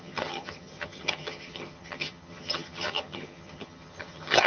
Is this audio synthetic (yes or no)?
yes